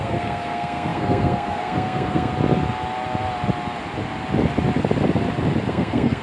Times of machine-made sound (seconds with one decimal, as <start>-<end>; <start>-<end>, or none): 0.0-2.3; 5.7-6.2

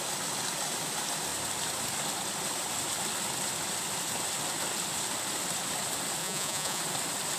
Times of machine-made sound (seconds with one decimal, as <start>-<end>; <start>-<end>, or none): 6.2-6.8

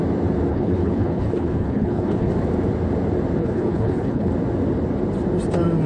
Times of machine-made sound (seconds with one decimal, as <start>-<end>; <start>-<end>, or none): 0.5-2.3; 3.4-4.3